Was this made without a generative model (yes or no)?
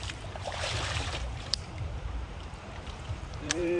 no